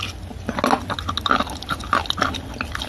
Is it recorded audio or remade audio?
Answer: recorded